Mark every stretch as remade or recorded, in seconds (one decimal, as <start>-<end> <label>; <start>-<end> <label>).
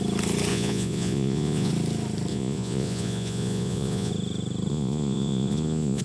0.0-0.5 recorded; 0.5-1.7 remade; 1.7-2.3 recorded; 2.3-4.1 remade; 4.1-4.7 recorded; 4.7-6.0 remade